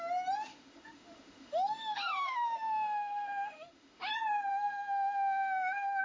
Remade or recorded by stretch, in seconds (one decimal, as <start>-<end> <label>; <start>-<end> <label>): 0.0-0.5 recorded; 0.5-4.1 remade; 4.1-4.5 recorded; 4.5-6.0 remade